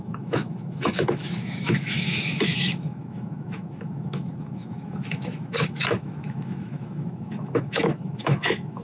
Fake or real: fake